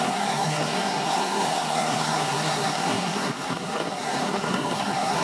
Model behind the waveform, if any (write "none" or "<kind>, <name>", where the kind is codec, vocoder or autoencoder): codec, SNAC